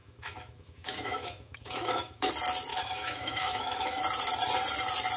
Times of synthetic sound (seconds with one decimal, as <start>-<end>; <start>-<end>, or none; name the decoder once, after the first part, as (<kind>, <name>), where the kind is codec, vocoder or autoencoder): 0.0-2.3 (autoencoder, DAC-VAE); 2.7-4.0